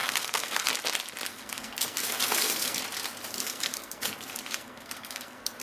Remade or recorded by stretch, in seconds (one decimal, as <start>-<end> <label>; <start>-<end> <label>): 0.0-0.7 remade; 0.7-1.3 recorded; 1.3-2.8 remade; 2.8-3.3 recorded; 3.3-5.6 remade